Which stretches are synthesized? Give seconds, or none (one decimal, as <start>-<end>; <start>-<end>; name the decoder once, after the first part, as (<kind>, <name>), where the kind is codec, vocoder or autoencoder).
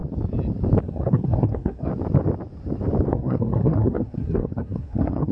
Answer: 0.8-1.9 (codec, SNAC); 3.1-5.3